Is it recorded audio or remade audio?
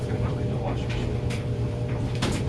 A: remade